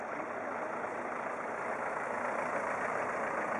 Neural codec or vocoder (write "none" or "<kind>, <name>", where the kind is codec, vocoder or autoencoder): vocoder, BigVGAN v2